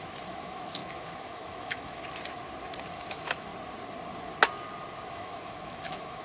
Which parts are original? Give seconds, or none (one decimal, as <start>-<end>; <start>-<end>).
2.0-2.9; 3.5-5.1